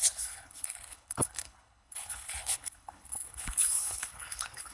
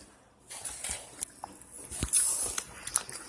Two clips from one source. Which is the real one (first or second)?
second